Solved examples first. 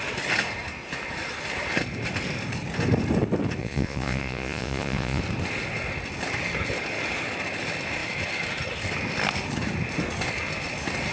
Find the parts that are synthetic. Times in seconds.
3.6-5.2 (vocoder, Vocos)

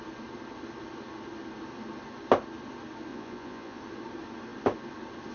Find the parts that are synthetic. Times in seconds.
3.1-3.8 (vocoder, Vocos)

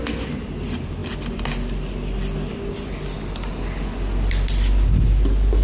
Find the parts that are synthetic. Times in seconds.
none

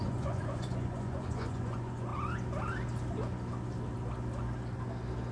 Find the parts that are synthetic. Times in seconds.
0.0-2.1 (vocoder, Vocos)

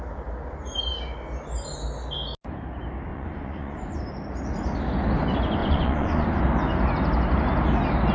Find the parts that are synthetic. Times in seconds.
3.1-4.0 (vocoder, Vocos); 5.6-6.4